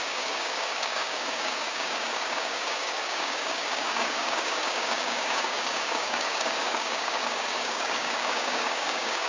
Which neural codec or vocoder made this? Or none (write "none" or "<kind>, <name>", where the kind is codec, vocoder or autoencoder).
codec, DAC